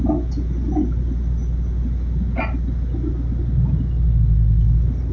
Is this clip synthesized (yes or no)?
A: no